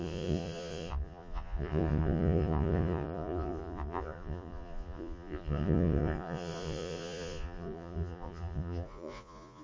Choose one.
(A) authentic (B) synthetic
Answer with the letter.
B